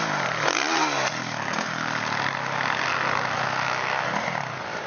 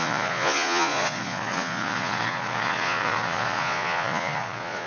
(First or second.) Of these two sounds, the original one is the first